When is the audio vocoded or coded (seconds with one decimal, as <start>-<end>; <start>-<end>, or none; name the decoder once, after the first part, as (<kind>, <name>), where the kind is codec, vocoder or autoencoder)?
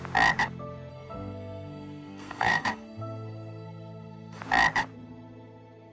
0.9-4.4 (codec, SNAC)